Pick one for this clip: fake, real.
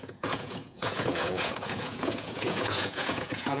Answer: fake